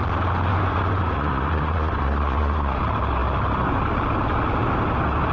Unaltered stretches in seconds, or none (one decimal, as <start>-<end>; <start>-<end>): 0.0-0.5; 2.8-5.3